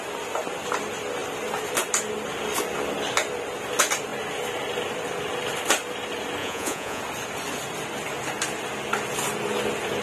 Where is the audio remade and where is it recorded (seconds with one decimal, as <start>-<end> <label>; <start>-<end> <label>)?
0.0-6.4 recorded; 6.4-7.0 remade; 7.0-10.0 recorded

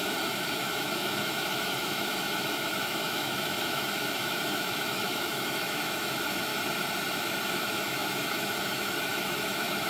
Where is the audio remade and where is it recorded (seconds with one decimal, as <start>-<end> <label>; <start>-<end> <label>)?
0.0-6.5 remade; 6.5-7.2 recorded; 7.2-9.9 remade